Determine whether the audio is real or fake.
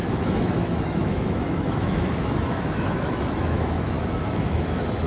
fake